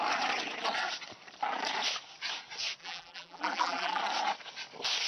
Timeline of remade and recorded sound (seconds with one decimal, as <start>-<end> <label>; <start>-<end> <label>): 0.0-2.8 recorded; 2.8-4.0 remade; 4.0-5.1 recorded